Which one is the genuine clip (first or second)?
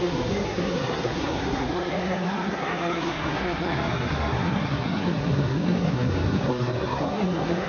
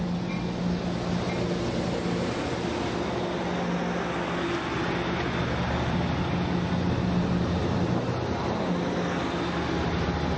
second